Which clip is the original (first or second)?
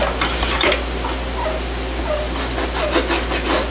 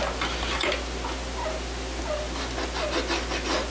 second